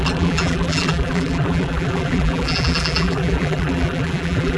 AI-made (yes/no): yes